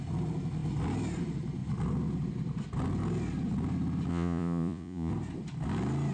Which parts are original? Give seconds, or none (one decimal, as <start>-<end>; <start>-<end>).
0.0-4.1; 5.1-6.1